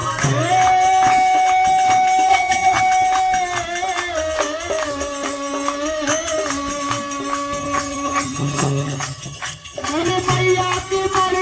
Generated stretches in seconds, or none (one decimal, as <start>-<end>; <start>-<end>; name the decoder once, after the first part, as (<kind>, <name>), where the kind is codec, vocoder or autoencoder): 2.3-2.8 (vocoder, HiFi-GAN); 7.6-10.1